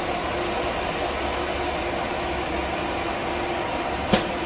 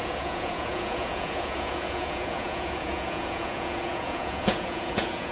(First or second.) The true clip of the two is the first